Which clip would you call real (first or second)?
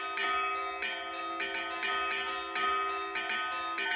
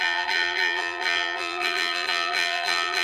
first